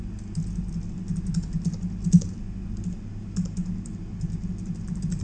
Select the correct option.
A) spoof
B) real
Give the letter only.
B